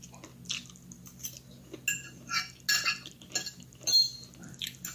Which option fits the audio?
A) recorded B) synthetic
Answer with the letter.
A